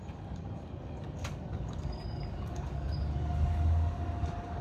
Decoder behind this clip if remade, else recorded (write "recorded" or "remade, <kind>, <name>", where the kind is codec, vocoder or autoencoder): remade, codec, DAC